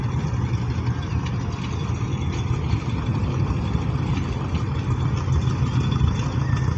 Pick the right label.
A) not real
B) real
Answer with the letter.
B